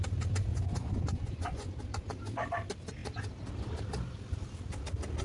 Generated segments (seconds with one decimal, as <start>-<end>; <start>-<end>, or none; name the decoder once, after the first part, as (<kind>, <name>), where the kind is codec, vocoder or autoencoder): 0.5-1.7 (vocoder, Vocos)

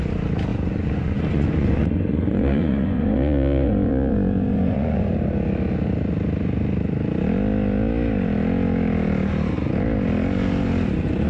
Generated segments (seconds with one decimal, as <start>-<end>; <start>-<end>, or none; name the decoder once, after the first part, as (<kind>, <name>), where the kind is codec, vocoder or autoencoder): 0.5-5.1 (vocoder, Vocos)

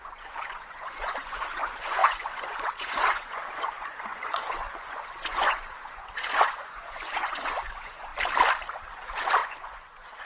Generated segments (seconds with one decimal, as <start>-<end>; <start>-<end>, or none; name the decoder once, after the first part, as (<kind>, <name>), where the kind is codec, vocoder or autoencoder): 0.0-8.1 (vocoder, Vocos); 8.9-10.2

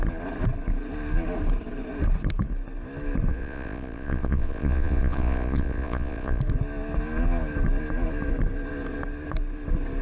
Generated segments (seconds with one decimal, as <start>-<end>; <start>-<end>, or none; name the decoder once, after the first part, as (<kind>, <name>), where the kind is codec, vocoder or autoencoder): 3.3-6.4 (vocoder, Vocos)

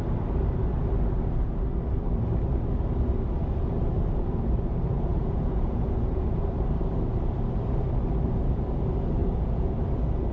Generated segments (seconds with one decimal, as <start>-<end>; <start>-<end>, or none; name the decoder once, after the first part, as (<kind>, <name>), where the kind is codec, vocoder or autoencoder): 5.1-6.4 (vocoder, Vocos); 9.2-9.7